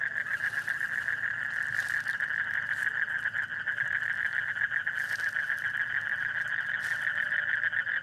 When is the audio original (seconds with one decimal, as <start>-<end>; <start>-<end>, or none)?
0.0-8.0

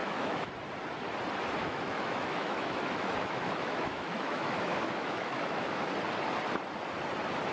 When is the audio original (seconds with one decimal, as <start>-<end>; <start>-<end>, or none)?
0.5-1.6; 5.9-7.5

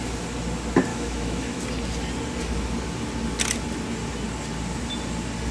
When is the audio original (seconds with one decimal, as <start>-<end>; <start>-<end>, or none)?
0.0-0.9; 1.6-5.5

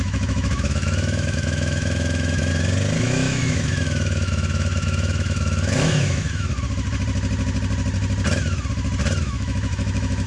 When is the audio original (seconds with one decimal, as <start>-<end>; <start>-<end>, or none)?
2.5-3.0; 6.5-9.2

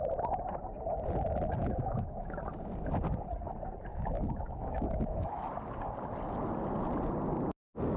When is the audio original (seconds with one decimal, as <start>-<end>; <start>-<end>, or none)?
0.0-1.6; 2.4-3.9; 5.5-8.0